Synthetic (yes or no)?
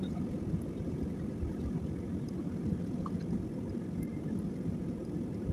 no